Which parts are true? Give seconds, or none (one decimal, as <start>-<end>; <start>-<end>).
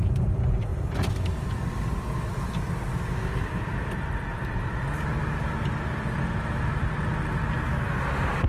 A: 0.0-8.5